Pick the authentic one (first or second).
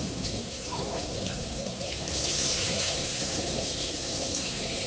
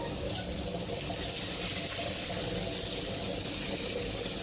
second